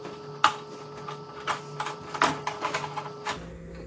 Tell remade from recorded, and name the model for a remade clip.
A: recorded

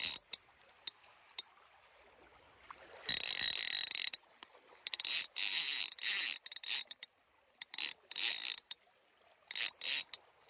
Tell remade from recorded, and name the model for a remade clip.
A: recorded